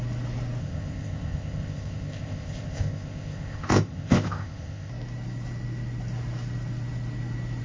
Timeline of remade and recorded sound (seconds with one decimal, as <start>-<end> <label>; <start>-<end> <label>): 0.0-0.6 recorded; 0.6-4.9 remade; 4.9-7.6 recorded